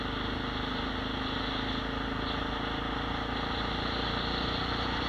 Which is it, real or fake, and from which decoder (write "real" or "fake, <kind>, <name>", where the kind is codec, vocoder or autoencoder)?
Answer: real